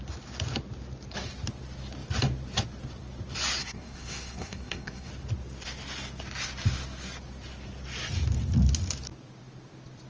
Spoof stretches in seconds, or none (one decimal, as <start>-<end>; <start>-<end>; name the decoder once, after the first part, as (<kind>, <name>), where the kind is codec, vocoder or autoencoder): 3.6-5.1 (codec, SNAC)